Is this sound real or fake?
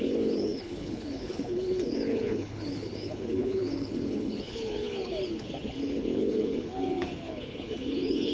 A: fake